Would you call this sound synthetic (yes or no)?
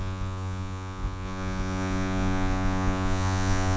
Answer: yes